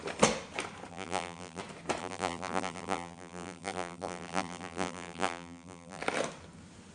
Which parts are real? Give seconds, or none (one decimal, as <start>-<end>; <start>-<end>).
0.0-0.9; 1.6-2.0; 6.0-6.9